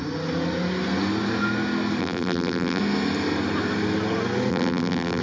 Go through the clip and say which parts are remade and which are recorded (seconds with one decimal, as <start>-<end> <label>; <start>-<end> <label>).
0.0-2.0 recorded; 2.0-2.8 remade; 2.8-4.5 recorded; 4.5-5.2 remade